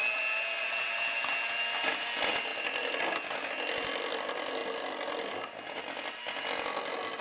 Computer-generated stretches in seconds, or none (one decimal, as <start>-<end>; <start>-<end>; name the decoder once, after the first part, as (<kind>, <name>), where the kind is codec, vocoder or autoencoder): none